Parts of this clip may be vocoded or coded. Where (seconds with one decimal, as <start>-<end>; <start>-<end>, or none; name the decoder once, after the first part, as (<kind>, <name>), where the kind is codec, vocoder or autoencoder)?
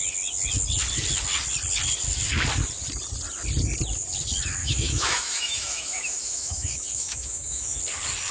4.6-7.8 (autoencoder, DAC-VAE)